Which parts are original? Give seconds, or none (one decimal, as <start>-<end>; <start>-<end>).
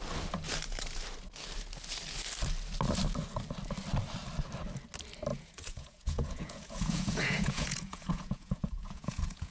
0.0-5.3